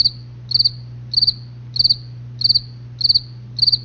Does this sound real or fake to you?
real